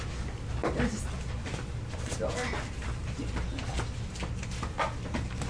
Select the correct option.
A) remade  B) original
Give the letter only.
B